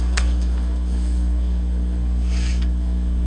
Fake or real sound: fake